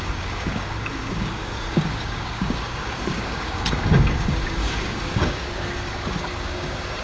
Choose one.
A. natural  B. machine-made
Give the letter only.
B